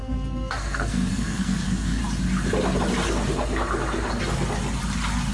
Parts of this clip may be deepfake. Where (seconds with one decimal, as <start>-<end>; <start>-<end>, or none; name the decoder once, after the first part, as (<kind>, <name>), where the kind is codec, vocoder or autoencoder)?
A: 0.0-2.0 (codec, SNAC)